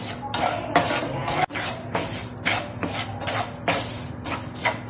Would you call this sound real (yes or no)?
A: yes